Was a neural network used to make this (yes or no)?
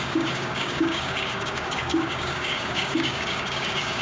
yes